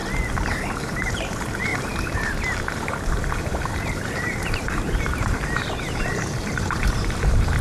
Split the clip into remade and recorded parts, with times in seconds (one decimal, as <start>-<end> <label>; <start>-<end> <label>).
0.0-0.5 recorded; 0.5-7.6 remade